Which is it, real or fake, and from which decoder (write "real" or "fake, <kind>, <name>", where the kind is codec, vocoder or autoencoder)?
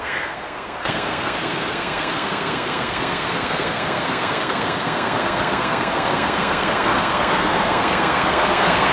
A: fake, codec, SNAC